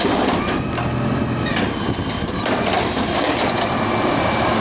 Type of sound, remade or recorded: recorded